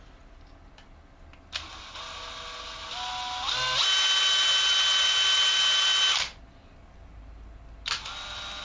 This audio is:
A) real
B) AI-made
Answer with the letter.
A